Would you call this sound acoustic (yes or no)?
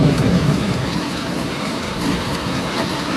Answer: no